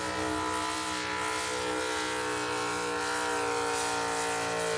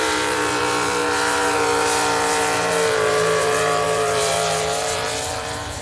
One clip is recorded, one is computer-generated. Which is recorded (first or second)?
first